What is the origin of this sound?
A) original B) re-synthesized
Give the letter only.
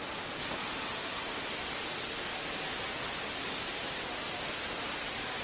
A